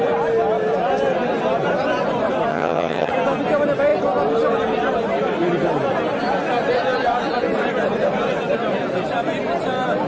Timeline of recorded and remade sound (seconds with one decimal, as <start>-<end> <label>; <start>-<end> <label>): 0.0-2.5 recorded; 2.5-3.1 remade; 3.1-10.1 recorded